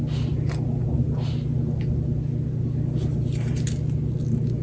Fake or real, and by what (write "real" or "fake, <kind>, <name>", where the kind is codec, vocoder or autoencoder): real